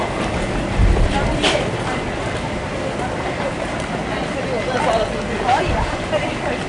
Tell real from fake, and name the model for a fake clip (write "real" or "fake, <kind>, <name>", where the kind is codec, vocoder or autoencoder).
real